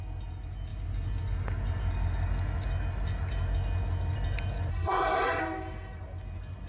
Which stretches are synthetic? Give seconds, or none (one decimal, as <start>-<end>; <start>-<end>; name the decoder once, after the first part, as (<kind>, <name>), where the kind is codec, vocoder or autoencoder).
4.7-5.4 (codec, SNAC)